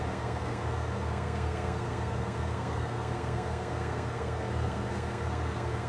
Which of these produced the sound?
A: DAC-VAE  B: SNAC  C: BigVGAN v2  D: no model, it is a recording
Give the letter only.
B